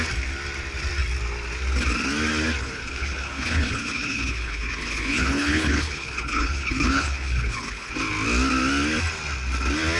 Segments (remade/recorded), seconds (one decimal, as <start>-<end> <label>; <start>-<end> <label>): 0.0-2.6 recorded; 2.6-7.9 remade; 7.9-10.0 recorded